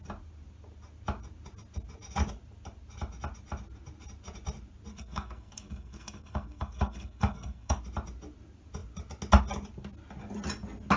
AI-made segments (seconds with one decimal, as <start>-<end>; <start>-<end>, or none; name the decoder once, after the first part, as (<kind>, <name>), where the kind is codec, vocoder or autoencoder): 4.9-7.8 (codec, SNAC)